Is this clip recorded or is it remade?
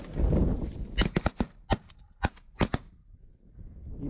recorded